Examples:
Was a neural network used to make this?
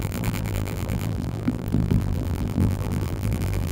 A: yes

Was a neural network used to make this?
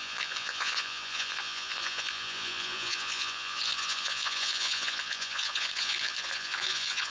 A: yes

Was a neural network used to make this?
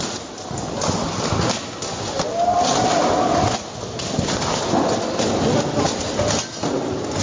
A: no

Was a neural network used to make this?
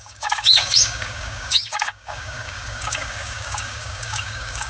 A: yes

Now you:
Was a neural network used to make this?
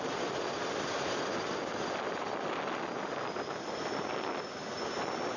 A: no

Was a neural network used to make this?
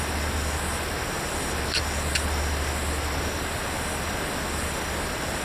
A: no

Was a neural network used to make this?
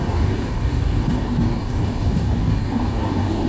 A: yes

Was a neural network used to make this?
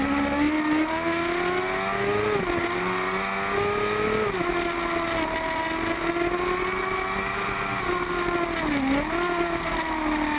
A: no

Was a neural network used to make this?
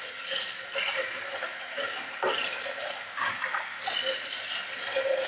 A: no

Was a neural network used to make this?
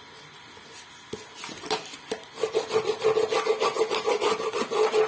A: no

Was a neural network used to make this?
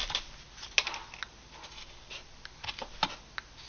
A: no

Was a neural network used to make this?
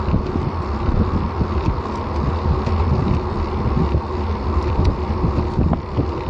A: no